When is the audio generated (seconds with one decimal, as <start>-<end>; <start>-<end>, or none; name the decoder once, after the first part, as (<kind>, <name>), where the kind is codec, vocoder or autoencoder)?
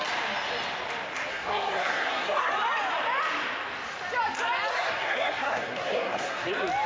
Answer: 1.3-2.5 (codec, SNAC); 4.7-6.5